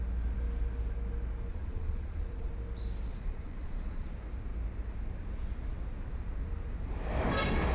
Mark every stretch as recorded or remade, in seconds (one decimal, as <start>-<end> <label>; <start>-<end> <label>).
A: 0.0-1.5 recorded; 1.5-2.5 remade; 2.5-3.1 recorded; 3.1-4.1 remade; 4.1-7.7 recorded